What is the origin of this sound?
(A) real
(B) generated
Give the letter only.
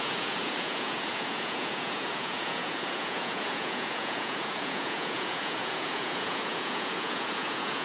B